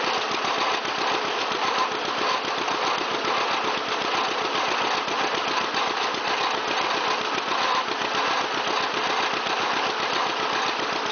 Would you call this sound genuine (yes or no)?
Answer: yes